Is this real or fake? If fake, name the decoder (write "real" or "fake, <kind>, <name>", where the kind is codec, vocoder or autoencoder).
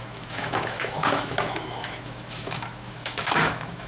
fake, autoencoder, DAC-VAE